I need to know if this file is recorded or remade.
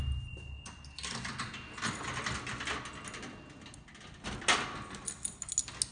recorded